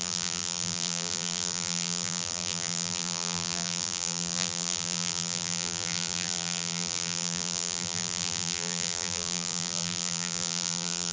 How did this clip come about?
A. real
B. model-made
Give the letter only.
B